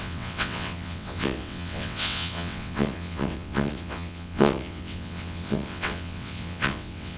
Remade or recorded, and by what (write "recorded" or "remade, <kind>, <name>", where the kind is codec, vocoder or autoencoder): remade, vocoder, WaveNeXt